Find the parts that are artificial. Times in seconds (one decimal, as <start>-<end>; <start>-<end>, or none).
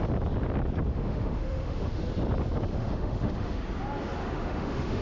0.9-2.0; 2.7-3.6; 4.2-5.0